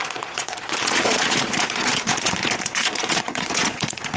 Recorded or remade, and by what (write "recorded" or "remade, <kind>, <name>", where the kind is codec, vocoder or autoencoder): remade, vocoder, Vocos